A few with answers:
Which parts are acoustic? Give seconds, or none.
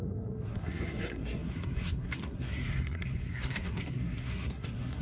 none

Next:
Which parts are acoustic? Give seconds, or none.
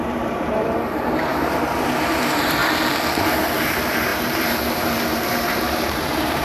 2.6-3.6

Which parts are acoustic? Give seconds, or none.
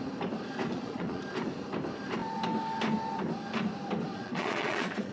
0.0-0.7; 1.2-4.1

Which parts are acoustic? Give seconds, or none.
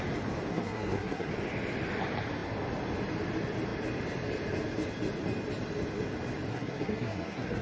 0.0-0.5; 1.3-6.5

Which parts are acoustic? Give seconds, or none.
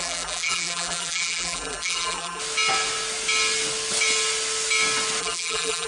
2.4-5.2